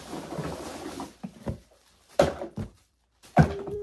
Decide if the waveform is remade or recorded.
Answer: remade